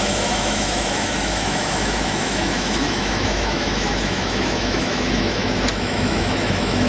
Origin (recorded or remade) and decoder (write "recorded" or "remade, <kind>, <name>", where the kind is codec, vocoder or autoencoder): remade, autoencoder, DAC-VAE